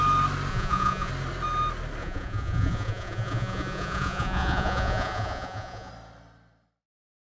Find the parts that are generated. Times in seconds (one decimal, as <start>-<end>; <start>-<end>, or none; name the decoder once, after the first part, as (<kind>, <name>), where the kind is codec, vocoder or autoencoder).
0.5-1.1 (vocoder, Vocos); 2.0-5.9